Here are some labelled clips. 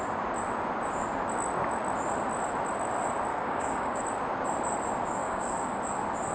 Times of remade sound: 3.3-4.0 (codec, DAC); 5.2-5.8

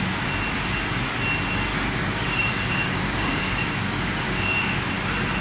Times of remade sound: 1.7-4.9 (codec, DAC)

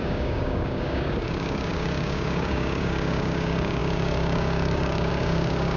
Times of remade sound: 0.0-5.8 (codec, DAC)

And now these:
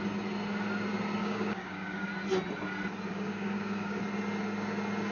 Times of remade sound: 1.2-2.1 (codec, DAC); 3.1-4.0

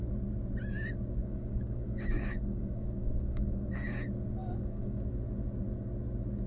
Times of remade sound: 1.2-4.0 (codec, DAC); 4.4-5.0